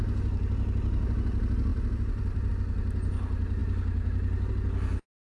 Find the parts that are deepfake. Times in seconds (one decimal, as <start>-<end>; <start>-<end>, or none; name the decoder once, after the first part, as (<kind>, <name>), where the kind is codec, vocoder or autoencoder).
1.7-2.5 (vocoder, BigVGAN v2)